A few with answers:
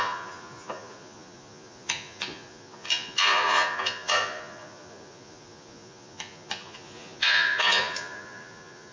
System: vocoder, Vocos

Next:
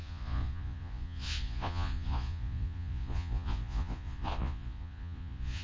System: vocoder, Vocos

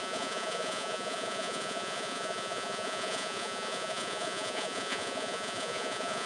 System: vocoder, Vocos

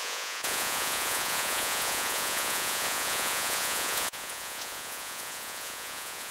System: vocoder, Vocos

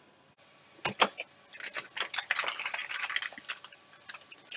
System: none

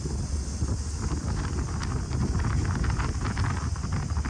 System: none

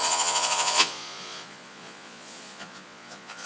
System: vocoder, Vocos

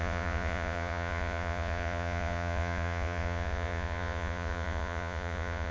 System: vocoder, Vocos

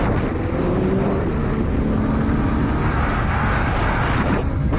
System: none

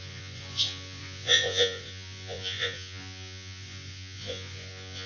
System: vocoder, Vocos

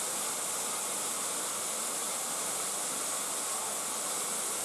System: none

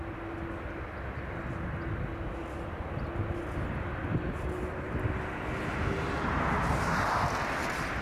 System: none